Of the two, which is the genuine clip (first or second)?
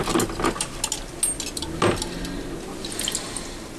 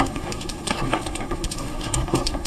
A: first